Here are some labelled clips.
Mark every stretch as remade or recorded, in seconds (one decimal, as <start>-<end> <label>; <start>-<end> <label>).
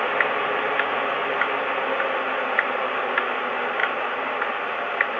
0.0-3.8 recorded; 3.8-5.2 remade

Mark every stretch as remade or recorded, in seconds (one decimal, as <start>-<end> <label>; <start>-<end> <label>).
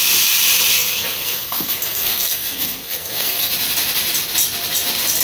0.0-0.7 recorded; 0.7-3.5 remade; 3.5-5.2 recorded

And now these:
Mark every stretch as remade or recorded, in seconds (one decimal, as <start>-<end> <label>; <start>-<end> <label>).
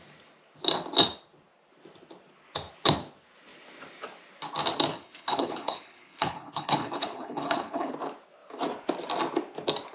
0.0-4.9 recorded; 4.9-7.9 remade; 7.9-9.9 recorded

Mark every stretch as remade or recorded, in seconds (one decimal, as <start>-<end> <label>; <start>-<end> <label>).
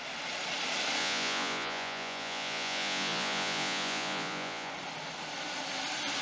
0.0-1.0 recorded; 1.0-4.7 remade; 4.7-6.2 recorded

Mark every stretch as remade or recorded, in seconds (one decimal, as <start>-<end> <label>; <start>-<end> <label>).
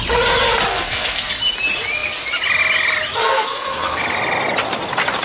0.0-0.7 recorded; 0.7-1.3 remade; 1.3-3.2 recorded; 3.2-4.0 remade; 4.0-5.2 recorded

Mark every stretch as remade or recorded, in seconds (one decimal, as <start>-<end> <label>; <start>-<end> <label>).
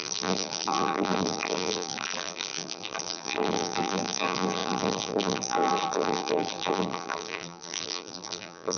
0.0-8.8 remade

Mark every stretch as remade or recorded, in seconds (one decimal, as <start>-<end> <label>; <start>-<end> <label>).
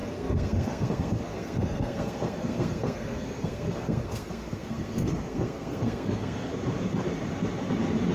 0.0-6.5 remade; 6.5-8.1 recorded